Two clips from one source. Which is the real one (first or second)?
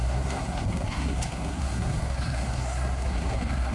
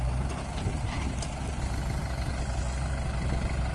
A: second